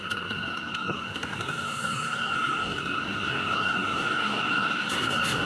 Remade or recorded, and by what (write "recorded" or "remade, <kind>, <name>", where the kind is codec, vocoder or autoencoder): remade, codec, SNAC